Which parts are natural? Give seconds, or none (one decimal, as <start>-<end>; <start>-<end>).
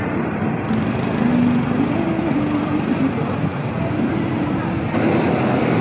0.0-5.8